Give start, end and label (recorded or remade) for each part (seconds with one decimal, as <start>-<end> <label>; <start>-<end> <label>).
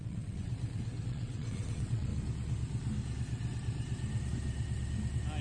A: 0.0-0.5 remade; 0.5-1.1 recorded; 1.1-2.1 remade; 2.1-5.4 recorded